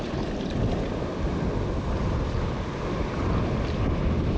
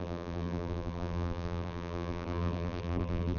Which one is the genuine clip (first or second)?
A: first